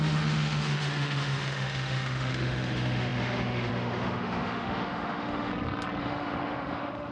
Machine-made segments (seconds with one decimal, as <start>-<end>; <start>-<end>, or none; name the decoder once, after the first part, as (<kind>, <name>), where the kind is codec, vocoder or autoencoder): 0.0-5.5 (autoencoder, DAC-VAE); 6.0-7.1